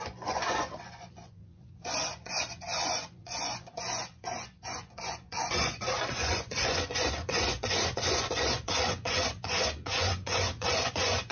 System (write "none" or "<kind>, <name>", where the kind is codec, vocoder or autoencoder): vocoder, Vocos